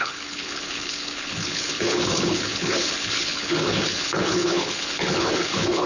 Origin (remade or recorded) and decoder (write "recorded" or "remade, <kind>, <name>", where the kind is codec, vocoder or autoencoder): remade, codec, HILCodec